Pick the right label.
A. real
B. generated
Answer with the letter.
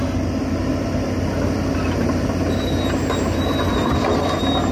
A